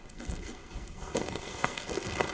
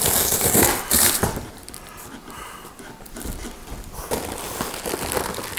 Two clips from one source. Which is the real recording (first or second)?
second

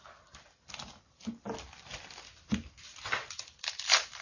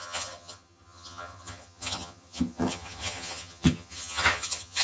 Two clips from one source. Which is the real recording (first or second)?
first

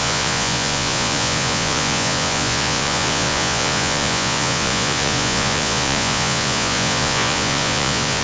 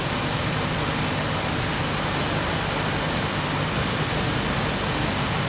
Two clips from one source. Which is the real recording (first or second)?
second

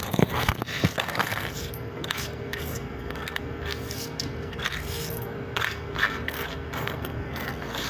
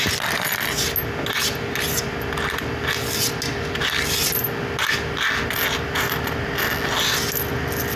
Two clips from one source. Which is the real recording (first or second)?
second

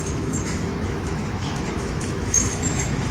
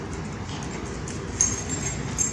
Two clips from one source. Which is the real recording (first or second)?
second